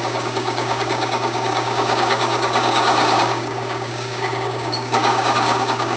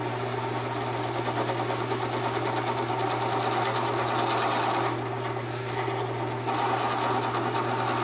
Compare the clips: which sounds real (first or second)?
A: second